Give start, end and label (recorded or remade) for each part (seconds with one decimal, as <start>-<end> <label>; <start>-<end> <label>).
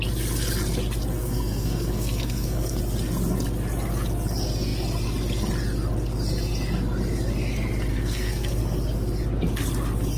0.0-1.2 recorded; 1.2-2.8 remade; 2.8-7.9 recorded; 7.9-8.6 remade; 8.6-10.2 recorded